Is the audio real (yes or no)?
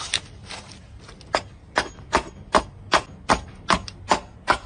yes